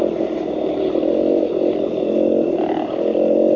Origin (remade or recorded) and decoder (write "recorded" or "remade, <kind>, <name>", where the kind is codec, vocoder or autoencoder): recorded